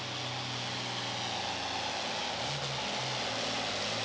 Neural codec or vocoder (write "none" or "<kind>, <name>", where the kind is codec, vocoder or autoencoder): none